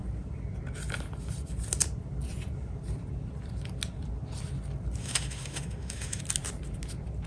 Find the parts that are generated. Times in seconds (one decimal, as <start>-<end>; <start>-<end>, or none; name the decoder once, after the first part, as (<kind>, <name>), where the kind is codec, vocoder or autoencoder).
5.0-6.2 (autoencoder, DAC-VAE)